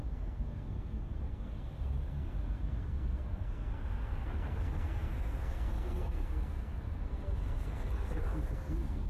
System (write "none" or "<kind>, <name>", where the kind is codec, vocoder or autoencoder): codec, SNAC